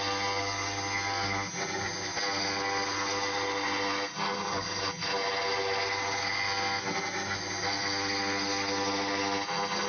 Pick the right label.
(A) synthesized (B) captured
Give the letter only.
B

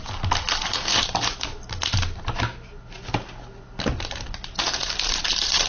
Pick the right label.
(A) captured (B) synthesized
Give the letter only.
A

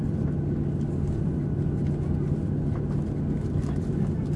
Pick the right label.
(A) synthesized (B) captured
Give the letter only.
B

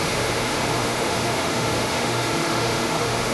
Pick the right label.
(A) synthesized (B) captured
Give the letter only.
A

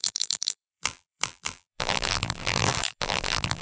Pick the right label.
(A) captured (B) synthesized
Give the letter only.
B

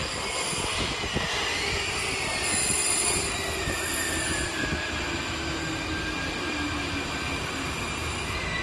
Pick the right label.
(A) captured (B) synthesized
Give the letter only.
A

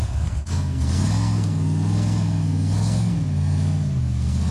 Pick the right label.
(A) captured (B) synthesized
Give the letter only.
B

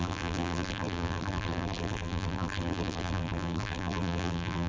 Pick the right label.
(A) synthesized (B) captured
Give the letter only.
A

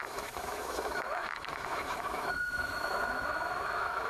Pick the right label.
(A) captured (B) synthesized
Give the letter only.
B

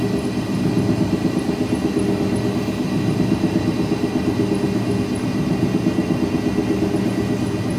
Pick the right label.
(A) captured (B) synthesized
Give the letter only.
A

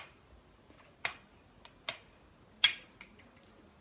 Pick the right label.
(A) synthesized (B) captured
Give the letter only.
B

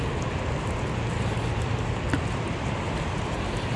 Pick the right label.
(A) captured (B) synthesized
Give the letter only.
A